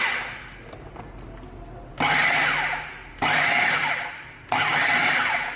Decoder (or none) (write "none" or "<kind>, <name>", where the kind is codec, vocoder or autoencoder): none